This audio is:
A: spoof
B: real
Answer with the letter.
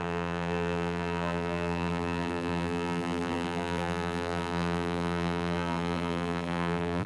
A